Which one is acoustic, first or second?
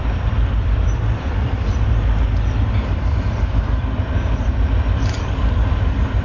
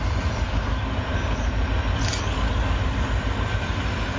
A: second